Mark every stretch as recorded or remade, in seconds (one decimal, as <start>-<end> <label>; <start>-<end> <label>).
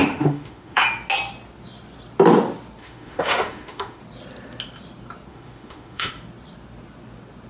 0.0-0.8 remade; 0.8-2.8 recorded; 2.8-4.0 remade; 4.0-5.3 recorded; 5.3-6.1 remade; 6.1-7.5 recorded